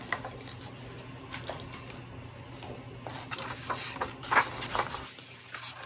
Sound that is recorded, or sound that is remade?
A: recorded